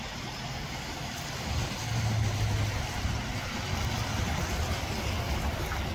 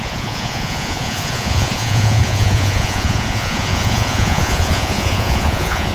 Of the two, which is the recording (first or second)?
first